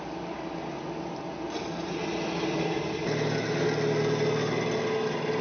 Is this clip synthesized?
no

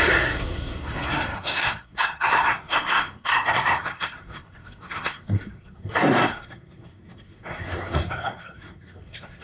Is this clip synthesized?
yes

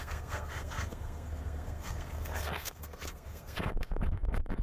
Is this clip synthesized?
yes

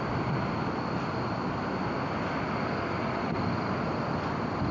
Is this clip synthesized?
no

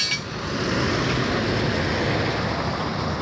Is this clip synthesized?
no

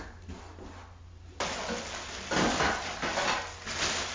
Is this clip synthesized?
no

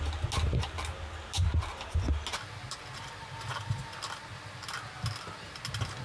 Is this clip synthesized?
no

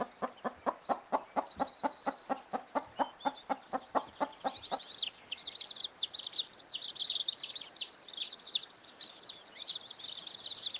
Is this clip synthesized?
no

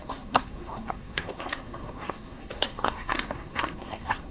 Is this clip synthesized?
yes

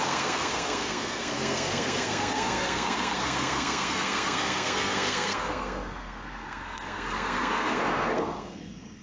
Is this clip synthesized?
yes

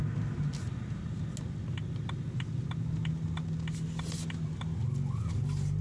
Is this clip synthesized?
no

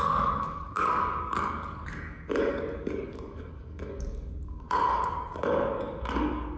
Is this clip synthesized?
yes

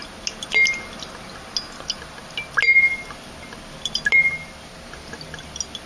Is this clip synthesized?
no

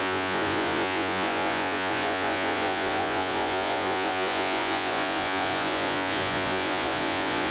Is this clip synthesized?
yes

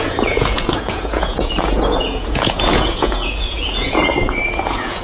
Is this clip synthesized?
yes